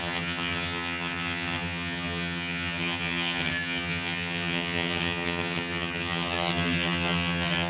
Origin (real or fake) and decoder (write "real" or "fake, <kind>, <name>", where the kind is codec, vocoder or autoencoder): fake, vocoder, HiFi-GAN